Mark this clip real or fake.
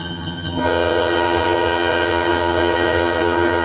fake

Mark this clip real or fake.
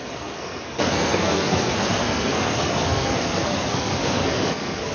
fake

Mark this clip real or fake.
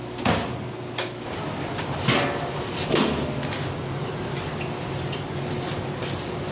real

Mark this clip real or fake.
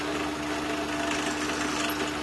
real